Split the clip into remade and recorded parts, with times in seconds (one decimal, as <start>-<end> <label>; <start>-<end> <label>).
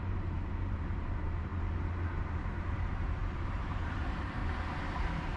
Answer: 0.0-1.5 remade; 1.5-2.2 recorded; 2.2-4.4 remade; 4.4-5.4 recorded